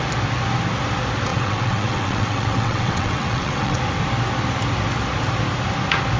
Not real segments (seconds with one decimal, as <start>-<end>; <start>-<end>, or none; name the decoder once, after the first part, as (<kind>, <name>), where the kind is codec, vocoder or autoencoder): 1.3-3.8 (vocoder, WaveNeXt)